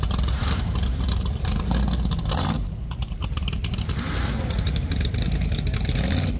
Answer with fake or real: fake